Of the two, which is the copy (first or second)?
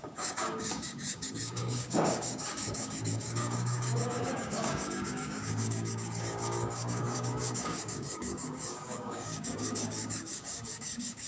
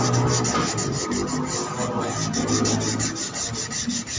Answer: first